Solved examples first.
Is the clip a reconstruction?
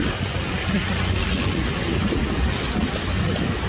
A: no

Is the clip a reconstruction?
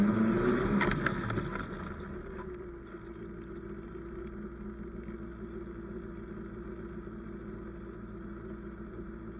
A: no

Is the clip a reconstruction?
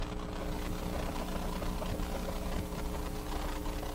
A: no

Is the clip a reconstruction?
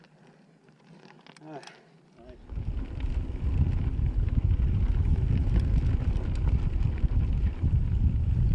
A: no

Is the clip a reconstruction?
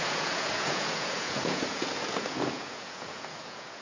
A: yes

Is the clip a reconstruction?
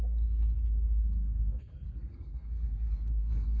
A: yes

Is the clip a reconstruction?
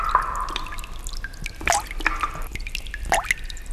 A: no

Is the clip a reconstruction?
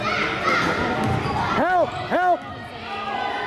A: no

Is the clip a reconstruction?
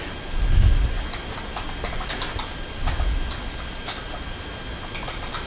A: no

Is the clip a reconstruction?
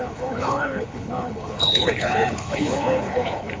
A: yes